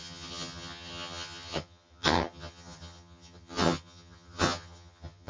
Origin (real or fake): fake